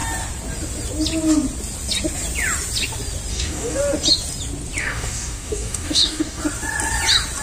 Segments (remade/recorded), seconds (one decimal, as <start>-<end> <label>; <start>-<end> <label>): 0.0-3.3 recorded; 3.3-3.8 remade; 3.8-4.8 recorded; 4.8-6.4 remade; 6.4-7.4 recorded